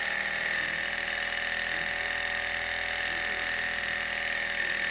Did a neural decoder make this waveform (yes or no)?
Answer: no